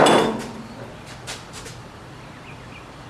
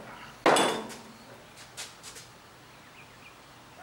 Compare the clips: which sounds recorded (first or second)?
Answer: second